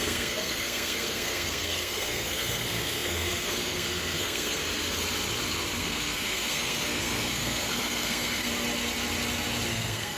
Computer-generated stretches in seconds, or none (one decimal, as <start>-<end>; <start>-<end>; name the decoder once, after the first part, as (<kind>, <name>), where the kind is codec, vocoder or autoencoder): 0.0-4.6 (codec, SNAC); 5.8-8.5; 9.7-10.2